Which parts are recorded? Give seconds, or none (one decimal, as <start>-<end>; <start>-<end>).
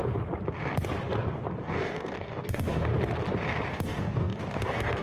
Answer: 0.0-1.6; 2.9-3.7